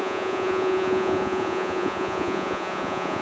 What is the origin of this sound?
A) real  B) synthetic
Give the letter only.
B